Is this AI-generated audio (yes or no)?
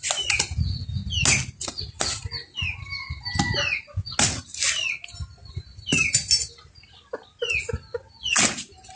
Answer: no